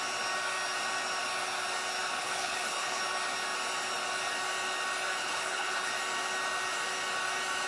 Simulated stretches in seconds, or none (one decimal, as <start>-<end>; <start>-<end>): 2.2-3.0; 5.2-5.9